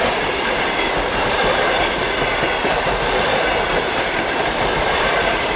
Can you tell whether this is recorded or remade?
remade